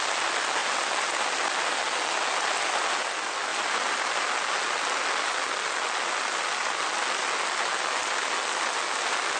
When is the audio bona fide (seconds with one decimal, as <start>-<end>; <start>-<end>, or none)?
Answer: 0.0-9.4